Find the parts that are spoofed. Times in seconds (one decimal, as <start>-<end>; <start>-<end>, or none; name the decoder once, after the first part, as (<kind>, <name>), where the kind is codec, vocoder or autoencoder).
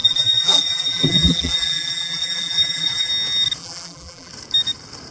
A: 0.0-3.1 (vocoder, BigVGAN v2); 3.6-4.3